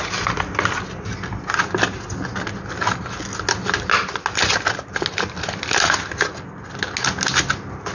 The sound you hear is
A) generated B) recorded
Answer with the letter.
B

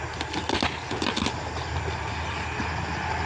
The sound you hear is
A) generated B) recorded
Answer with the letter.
B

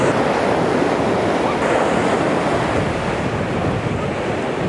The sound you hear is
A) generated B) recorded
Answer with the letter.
B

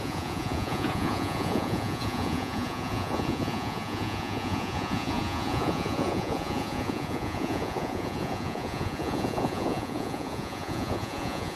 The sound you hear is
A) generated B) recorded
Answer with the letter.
A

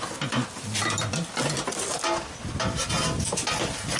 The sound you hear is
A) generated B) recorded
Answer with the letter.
B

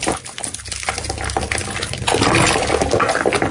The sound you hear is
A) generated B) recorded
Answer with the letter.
B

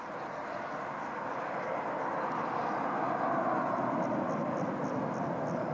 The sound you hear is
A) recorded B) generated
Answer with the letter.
A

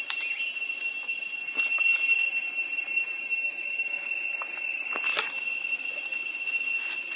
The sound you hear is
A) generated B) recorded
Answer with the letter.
B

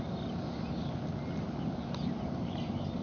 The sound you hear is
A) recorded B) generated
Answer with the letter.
A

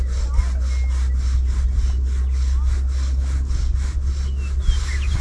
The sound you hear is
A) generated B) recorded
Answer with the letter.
B